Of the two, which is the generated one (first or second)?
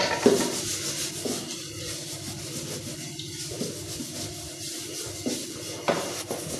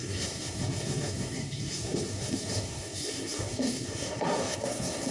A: second